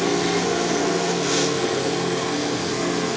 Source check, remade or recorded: remade